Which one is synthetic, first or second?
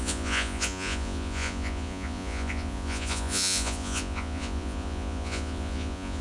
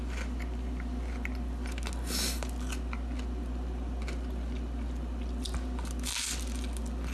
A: first